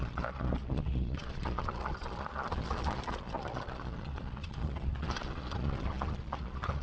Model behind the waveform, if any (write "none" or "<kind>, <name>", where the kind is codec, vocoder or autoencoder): vocoder, Vocos